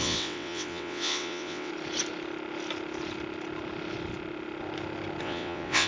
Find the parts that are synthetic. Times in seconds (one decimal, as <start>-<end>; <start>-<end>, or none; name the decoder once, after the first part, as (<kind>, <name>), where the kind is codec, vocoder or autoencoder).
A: 0.0-1.7 (vocoder, WaveNeXt); 5.2-5.9

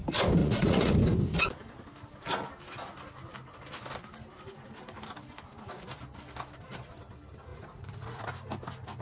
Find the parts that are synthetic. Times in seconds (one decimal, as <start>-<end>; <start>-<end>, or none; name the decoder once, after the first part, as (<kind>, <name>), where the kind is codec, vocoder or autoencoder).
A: 0.4-0.9 (vocoder, Vocos); 7.5-8.2

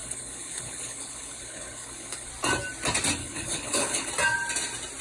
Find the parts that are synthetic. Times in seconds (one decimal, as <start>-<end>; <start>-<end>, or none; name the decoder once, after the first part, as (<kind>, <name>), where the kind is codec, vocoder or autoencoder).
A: 0.0-2.3 (codec, HILCodec); 3.2-4.1